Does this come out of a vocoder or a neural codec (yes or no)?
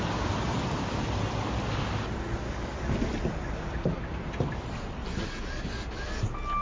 no